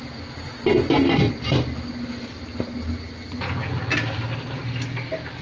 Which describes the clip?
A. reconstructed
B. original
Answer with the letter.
B